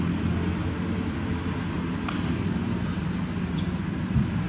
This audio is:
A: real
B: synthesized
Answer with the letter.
A